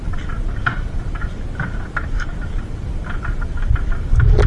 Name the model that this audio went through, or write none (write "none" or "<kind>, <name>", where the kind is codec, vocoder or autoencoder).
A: none